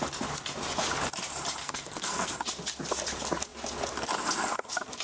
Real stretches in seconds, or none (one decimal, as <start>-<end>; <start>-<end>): 0.0-1.6; 2.3-5.0